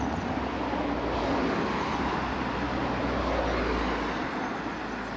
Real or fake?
real